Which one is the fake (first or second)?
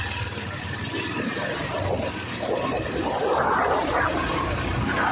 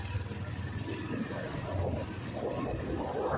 first